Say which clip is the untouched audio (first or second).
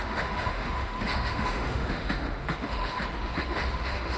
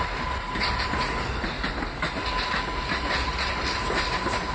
second